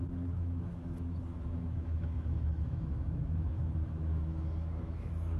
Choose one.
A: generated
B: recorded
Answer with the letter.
A